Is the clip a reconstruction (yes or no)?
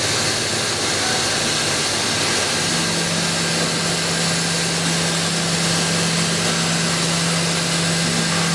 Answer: no